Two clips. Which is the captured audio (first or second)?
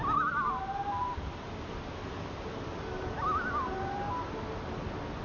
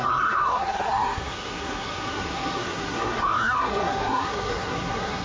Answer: first